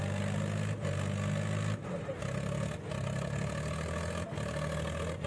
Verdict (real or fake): real